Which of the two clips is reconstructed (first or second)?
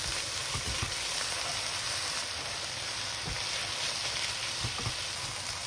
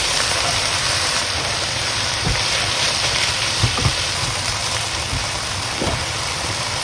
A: second